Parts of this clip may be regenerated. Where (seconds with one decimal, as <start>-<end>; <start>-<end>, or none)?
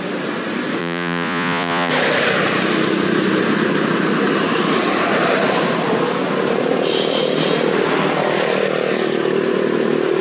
0.8-1.9